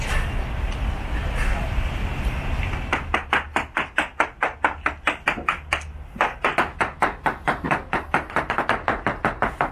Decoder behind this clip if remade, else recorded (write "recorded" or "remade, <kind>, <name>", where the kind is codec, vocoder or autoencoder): recorded